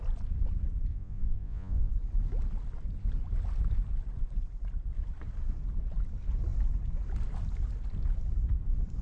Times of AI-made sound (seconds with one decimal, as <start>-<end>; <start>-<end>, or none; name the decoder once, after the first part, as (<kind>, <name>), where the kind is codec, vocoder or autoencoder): 0.9-1.9 (vocoder, Vocos)